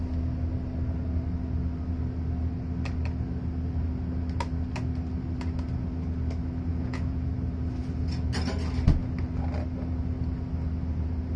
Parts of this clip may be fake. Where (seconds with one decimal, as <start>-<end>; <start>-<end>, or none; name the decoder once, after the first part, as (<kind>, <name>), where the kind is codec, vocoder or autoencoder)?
6.7-7.3 (vocoder, Vocos)

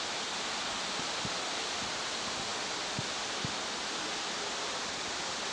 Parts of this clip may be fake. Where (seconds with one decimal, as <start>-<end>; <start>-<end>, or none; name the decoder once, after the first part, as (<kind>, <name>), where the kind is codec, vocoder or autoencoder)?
2.5-3.3 (vocoder, BigVGAN v2)

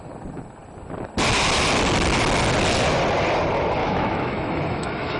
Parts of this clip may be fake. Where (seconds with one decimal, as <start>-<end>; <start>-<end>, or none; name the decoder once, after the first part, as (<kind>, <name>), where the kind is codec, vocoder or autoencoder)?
3.8-5.2 (autoencoder, DAC-VAE)

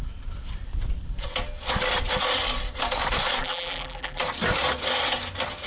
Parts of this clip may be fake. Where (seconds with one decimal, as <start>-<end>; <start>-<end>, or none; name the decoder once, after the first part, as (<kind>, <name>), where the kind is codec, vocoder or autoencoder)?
3.4-4.2 (vocoder, BigVGAN v2)

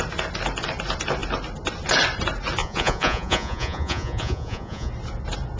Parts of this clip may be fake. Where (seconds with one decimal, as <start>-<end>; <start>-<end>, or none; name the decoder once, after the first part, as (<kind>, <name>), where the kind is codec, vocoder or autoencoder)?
2.6-4.9 (vocoder, Vocos)

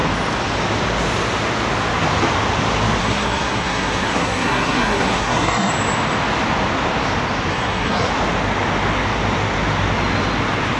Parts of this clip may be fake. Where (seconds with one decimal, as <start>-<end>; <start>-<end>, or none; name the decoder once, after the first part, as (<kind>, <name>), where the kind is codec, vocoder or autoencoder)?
3.0-5.7 (codec, SNAC); 7.5-8.1

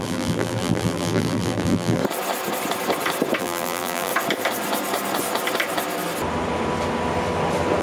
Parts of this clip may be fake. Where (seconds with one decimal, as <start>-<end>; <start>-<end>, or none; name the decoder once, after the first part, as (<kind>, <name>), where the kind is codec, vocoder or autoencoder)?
0.0-2.0 (vocoder, BigVGAN v2); 3.4-4.1

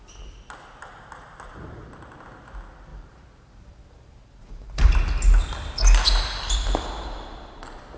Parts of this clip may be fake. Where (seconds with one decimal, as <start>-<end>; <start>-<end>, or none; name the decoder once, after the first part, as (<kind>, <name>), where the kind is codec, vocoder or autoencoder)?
2.9-4.9 (vocoder, BigVGAN v2)